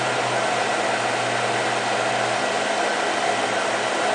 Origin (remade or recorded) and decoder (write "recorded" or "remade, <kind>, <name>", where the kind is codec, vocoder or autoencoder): recorded